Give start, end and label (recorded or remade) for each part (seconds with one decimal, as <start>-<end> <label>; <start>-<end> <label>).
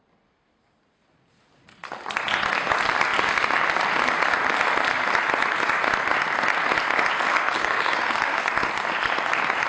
0.0-7.3 recorded; 7.3-8.4 remade; 8.4-9.7 recorded